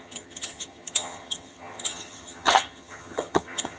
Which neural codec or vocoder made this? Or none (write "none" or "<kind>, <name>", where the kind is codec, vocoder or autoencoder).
vocoder, HiFi-GAN